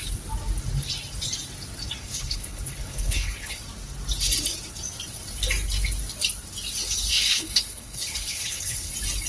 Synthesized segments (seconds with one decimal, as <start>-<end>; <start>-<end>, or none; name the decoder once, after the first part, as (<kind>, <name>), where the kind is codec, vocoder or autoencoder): 2.1-3.6 (codec, HILCodec); 7.1-8.9